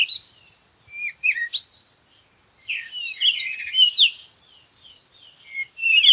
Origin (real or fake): fake